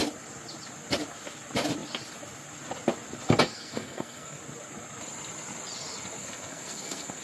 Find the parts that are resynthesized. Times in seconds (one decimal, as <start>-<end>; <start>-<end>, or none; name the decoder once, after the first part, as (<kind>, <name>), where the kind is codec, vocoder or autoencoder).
3.5-4.4 (codec, SNAC); 6.2-7.2

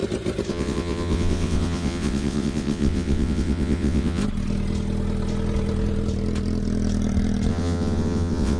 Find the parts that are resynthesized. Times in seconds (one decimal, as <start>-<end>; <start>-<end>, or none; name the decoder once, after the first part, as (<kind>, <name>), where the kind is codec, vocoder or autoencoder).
0.5-4.2 (vocoder, WaveNeXt); 7.5-8.6

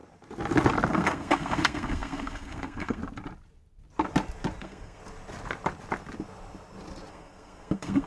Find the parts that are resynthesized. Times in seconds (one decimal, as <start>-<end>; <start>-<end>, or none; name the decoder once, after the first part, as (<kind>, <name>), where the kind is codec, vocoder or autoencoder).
0.9-3.0 (codec, SNAC); 4.6-5.0; 7.1-8.1

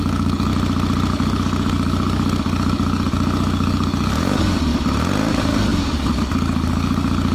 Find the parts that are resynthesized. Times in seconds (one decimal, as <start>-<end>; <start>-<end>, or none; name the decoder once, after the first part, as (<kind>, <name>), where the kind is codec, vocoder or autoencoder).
0.0-0.5 (codec, DAC); 1.1-4.7; 5.3-7.3

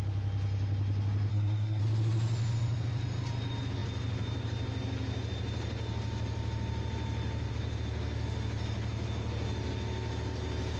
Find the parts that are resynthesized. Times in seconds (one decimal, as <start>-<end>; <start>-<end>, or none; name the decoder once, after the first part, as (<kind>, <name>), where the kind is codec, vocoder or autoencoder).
1.3-1.8 (codec, SNAC)

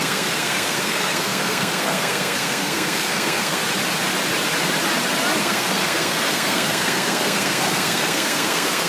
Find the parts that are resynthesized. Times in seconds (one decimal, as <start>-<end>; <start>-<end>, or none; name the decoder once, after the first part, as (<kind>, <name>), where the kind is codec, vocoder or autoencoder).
0.0-3.6 (codec, SNAC); 5.4-8.9

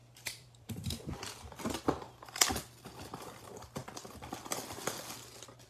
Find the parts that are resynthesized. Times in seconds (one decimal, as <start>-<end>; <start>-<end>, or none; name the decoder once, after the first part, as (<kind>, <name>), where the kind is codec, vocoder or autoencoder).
0.0-1.1 (vocoder, BigVGAN v2)

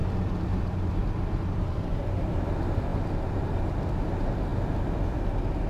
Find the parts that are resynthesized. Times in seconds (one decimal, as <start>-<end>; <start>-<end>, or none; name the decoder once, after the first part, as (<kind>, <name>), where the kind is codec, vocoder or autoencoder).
0.0-2.9 (vocoder, BigVGAN v2); 3.6-4.5; 5.1-5.7